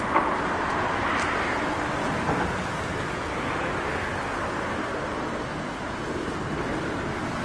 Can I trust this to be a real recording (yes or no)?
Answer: yes